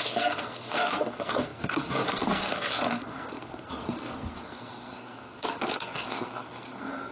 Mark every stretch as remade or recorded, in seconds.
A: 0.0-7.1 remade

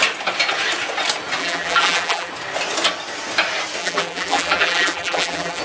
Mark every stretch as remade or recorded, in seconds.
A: 0.0-1.4 recorded; 1.4-2.3 remade; 2.3-3.8 recorded; 3.8-5.6 remade

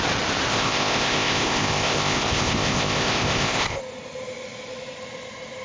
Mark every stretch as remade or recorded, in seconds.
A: 0.0-0.5 recorded; 0.5-3.8 remade; 3.8-5.6 recorded

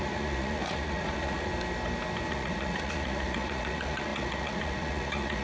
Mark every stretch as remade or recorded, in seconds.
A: 0.0-1.5 remade; 1.5-2.3 recorded; 2.3-5.4 remade

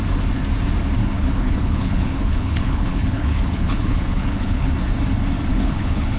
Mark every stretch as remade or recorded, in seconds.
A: 0.0-1.0 recorded; 1.0-4.7 remade; 4.7-5.5 recorded; 5.5-6.2 remade

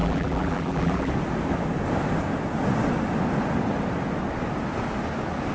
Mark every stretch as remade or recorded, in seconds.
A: 0.0-1.1 remade; 1.1-5.5 recorded

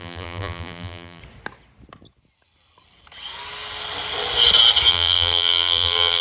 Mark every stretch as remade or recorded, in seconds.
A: 0.0-1.2 remade; 1.2-4.9 recorded; 4.9-6.2 remade

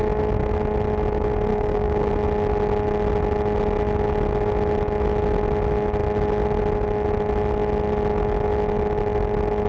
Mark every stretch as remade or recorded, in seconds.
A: 0.0-1.5 recorded; 1.5-2.1 remade; 2.1-9.7 recorded